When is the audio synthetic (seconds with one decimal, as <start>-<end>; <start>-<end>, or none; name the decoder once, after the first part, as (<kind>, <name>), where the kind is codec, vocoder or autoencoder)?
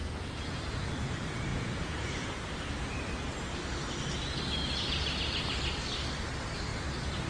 0.0-0.9 (vocoder, Vocos); 1.5-2.4